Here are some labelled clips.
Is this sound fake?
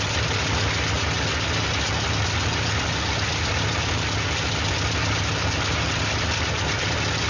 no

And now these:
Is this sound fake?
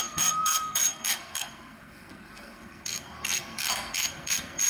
yes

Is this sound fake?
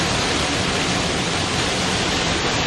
no